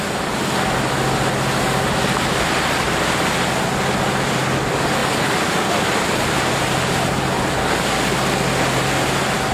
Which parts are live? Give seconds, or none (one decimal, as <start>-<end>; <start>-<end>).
0.0-9.5